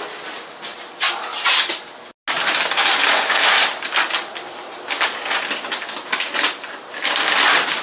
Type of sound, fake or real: real